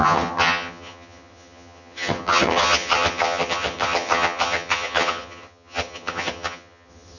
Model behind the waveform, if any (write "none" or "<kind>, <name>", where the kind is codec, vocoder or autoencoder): vocoder, HiFi-GAN